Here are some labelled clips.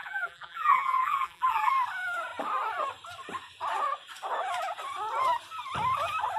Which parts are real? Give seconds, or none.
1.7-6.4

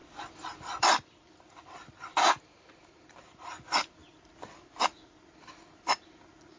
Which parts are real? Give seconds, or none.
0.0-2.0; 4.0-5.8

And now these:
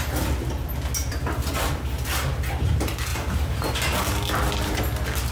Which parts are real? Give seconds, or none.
0.0-1.0; 2.2-5.3